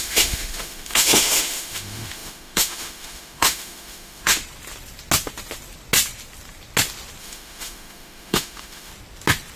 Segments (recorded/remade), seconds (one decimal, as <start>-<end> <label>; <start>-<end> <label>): 0.0-4.4 remade; 4.4-7.2 recorded; 7.2-8.9 remade; 8.9-9.6 recorded